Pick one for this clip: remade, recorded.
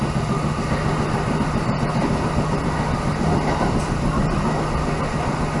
recorded